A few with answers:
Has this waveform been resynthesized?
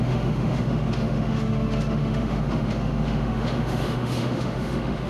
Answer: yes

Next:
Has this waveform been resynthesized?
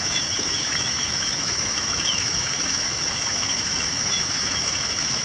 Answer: yes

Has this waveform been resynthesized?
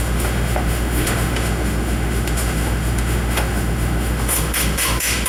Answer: yes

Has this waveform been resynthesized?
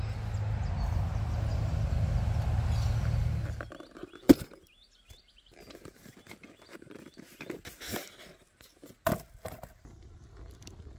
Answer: no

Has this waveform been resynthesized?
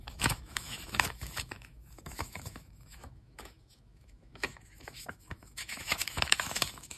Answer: yes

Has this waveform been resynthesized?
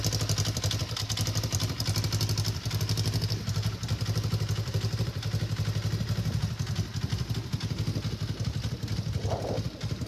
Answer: no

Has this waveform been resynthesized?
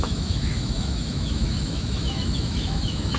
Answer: yes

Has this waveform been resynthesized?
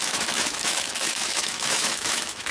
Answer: yes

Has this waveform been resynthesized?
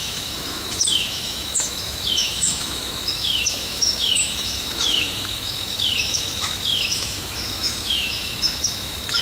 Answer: yes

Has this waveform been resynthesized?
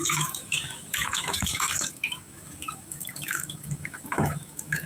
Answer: yes